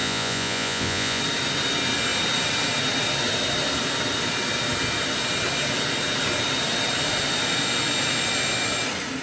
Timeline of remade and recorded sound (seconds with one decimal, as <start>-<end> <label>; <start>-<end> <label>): 0.0-1.2 remade; 1.2-9.2 recorded